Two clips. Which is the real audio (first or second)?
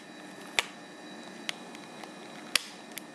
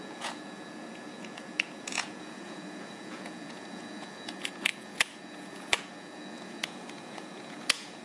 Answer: first